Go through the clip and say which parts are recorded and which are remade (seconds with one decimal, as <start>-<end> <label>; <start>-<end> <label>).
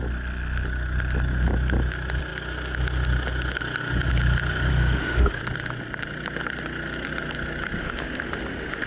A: 0.0-4.7 recorded; 4.7-5.4 remade; 5.4-7.8 recorded; 7.8-8.9 remade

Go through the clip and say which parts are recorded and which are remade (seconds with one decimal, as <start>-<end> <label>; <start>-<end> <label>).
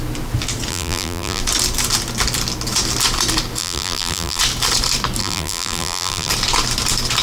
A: 0.0-0.7 recorded; 0.7-1.4 remade; 1.4-3.6 recorded; 3.6-4.4 remade; 4.4-5.2 recorded; 5.2-6.3 remade; 6.3-7.2 recorded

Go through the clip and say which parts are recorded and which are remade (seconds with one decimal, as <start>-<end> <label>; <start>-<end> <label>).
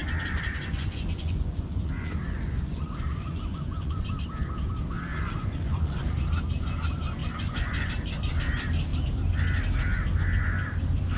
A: 0.0-4.0 remade; 4.0-5.1 recorded; 5.1-6.1 remade; 6.1-7.2 recorded; 7.2-7.9 remade; 7.9-11.2 recorded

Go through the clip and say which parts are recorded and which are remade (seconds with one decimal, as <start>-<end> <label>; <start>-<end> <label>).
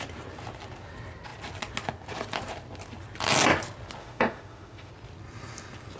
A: 0.0-4.0 recorded; 4.0-4.9 remade; 4.9-6.0 recorded